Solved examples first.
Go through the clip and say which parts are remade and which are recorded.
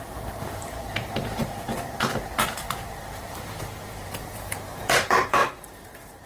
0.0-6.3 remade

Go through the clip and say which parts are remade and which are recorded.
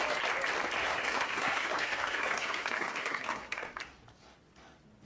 0.0-0.8 recorded; 0.8-3.8 remade; 3.8-5.0 recorded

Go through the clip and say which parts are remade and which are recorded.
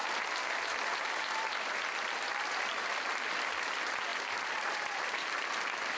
0.0-4.1 recorded; 4.1-5.5 remade; 5.5-6.0 recorded